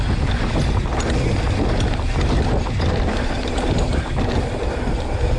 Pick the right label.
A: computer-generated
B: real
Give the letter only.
B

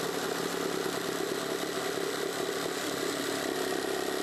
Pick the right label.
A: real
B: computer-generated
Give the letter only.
A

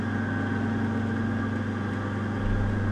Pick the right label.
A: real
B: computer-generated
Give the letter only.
A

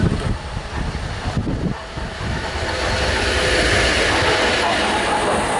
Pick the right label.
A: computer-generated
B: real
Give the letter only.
B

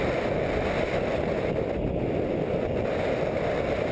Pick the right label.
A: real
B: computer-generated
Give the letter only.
A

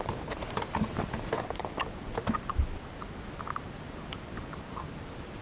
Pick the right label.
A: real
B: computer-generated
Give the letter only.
A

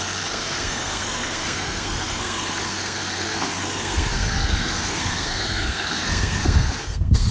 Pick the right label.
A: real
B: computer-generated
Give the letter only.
B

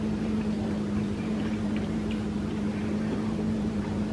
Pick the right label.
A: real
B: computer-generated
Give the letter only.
B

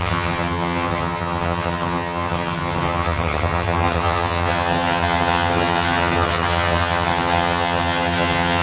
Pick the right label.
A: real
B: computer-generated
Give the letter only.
B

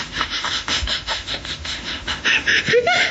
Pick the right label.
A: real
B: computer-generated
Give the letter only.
B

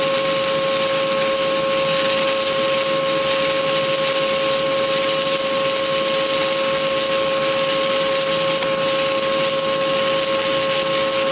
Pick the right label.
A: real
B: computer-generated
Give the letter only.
A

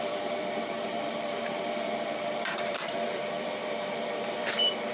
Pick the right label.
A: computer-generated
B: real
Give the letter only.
A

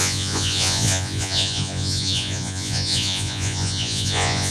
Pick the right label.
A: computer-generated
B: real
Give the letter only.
A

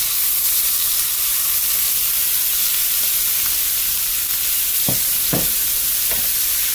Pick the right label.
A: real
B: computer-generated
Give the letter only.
A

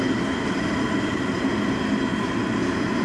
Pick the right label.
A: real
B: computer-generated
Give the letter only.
A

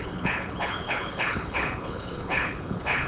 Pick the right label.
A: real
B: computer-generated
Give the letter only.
B